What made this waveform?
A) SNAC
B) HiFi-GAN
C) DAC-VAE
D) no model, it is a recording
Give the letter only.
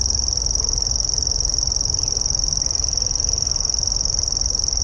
D